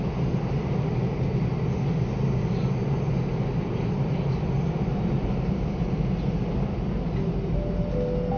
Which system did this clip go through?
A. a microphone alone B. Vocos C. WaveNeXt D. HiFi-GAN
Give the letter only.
A